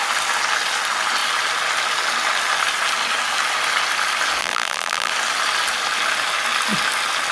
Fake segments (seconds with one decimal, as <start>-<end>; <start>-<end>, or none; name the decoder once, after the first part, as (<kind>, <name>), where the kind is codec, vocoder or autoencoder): 4.4-5.1 (vocoder, BigVGAN v2)